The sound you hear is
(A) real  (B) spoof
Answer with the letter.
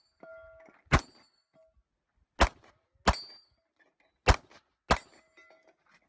A